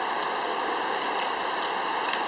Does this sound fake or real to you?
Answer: real